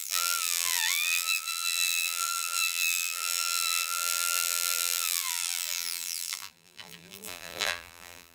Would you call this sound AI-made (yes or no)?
yes